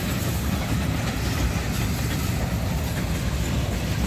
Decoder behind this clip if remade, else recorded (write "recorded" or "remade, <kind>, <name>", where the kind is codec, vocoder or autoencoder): recorded